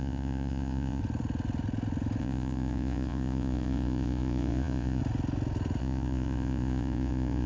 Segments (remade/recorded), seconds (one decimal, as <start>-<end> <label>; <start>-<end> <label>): 0.0-1.0 remade; 1.0-2.2 recorded; 2.2-5.0 remade; 5.0-5.8 recorded; 5.8-7.5 remade